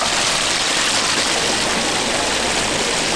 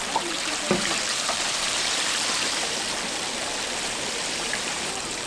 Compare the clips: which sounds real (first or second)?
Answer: first